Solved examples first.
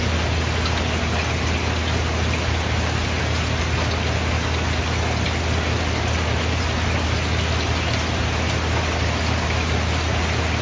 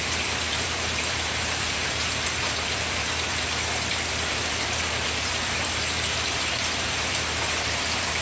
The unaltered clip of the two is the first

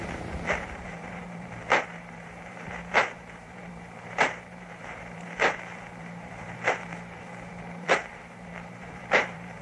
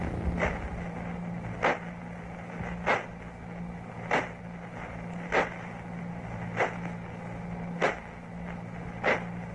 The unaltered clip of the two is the second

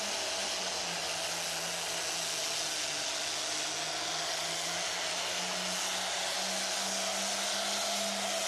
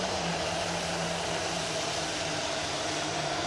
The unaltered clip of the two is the first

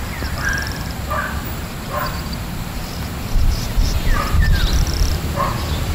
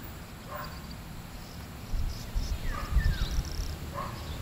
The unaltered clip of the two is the second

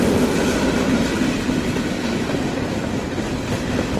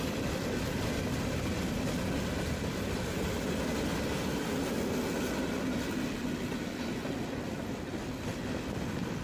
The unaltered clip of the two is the second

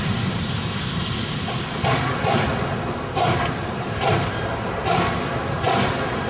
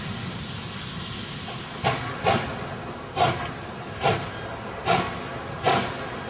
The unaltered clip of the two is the second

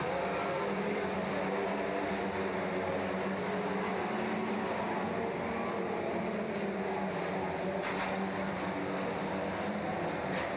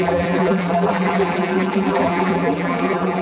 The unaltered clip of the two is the first